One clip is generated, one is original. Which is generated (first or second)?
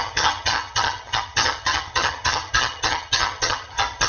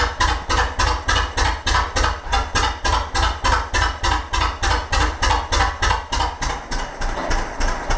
first